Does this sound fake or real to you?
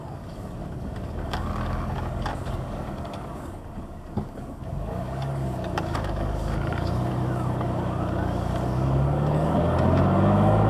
fake